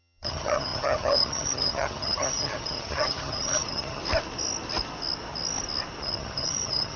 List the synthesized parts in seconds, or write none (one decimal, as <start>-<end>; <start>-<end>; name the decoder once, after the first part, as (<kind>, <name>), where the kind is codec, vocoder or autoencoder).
0.0-4.0 (vocoder, HiFi-GAN); 6.0-7.0